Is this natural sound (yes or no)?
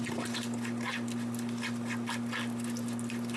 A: yes